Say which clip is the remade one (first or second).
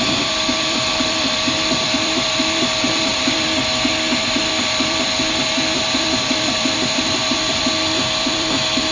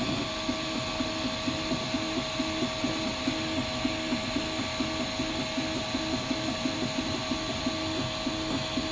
first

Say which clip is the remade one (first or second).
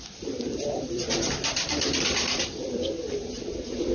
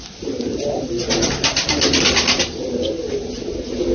first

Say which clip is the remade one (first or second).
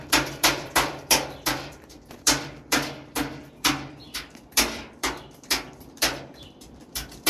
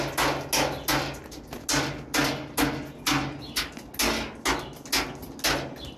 first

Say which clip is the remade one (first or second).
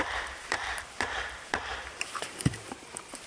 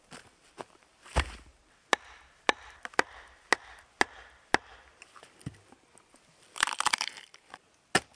first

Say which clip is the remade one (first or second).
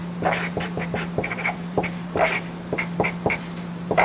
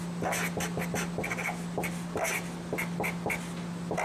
first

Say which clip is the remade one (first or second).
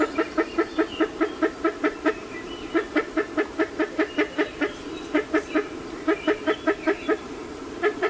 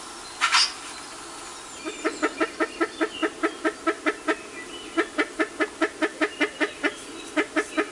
first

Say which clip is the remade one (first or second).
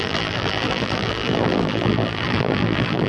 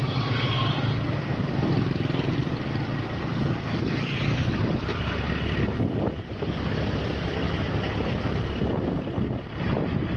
first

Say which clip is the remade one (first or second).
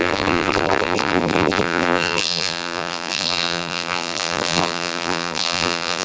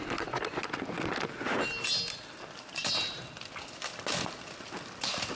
first